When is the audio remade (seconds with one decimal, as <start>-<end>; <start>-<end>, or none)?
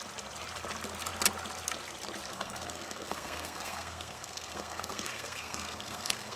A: 2.3-6.4